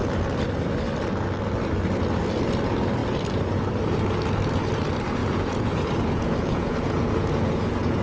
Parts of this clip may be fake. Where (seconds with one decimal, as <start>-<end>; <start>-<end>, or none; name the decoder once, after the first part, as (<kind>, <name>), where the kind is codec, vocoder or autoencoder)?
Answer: 5.2-8.0 (vocoder, Vocos)